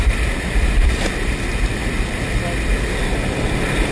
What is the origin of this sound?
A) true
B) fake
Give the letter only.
A